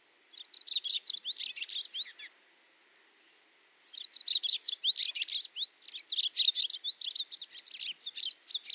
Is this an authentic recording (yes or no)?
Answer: yes